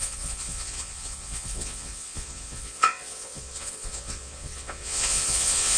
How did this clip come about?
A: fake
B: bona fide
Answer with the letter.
A